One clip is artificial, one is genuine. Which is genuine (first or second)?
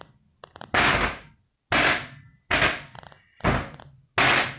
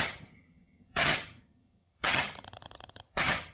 first